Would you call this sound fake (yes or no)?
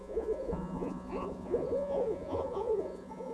yes